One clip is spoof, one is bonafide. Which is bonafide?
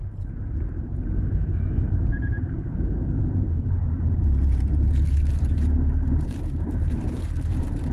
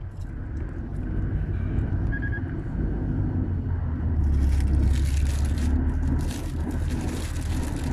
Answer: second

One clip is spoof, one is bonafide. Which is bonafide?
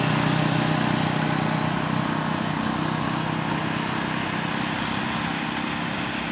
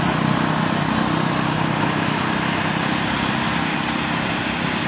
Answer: first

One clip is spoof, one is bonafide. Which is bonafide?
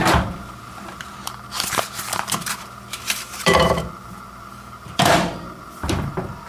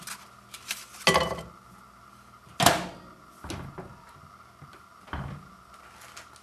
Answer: second